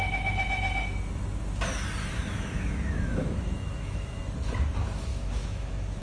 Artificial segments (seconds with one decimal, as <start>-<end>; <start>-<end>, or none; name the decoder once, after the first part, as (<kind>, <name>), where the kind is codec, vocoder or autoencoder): 2.0-4.2 (autoencoder, DAC-VAE); 5.1-6.0